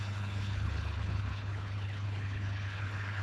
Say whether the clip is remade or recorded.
remade